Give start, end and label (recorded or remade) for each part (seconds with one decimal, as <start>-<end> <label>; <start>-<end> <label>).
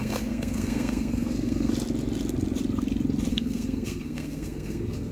0.0-1.7 remade; 1.7-3.3 recorded; 3.3-5.1 remade